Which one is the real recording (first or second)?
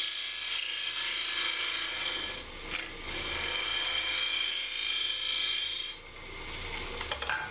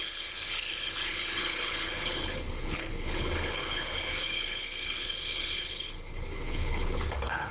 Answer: first